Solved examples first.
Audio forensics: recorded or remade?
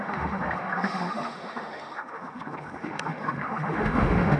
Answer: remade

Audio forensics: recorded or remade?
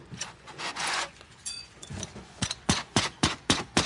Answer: remade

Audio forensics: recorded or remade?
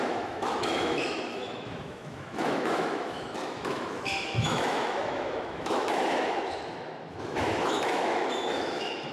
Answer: remade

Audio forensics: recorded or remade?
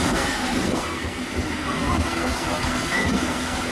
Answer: remade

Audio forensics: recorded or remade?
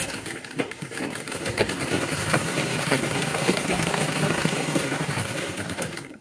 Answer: remade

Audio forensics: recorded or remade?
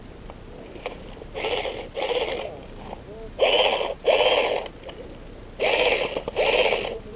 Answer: recorded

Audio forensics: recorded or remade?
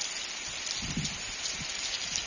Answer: recorded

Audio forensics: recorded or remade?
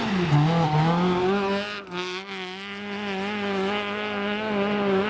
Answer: recorded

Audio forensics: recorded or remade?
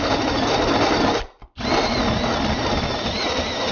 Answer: recorded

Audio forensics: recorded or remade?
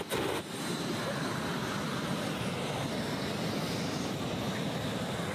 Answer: remade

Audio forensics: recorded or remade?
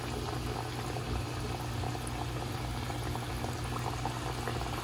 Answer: recorded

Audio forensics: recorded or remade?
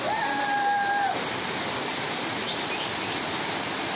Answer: recorded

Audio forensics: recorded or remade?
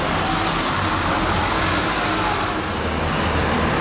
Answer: recorded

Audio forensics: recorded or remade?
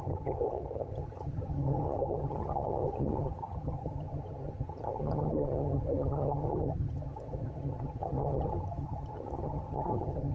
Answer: remade